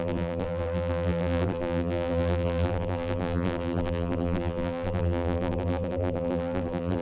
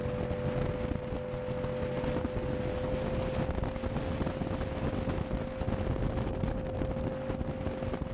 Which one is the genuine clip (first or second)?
second